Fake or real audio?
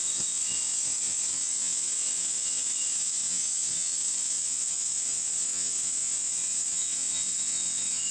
fake